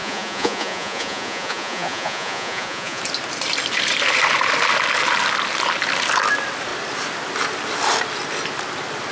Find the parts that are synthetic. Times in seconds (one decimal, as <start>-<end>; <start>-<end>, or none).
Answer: 0.0-3.0